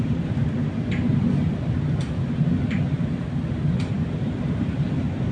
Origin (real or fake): fake